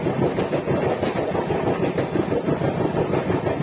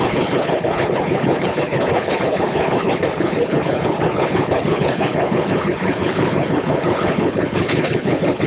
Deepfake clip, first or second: second